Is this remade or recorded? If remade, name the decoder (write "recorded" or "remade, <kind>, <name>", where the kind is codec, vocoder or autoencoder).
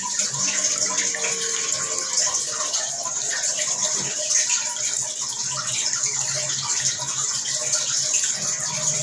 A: recorded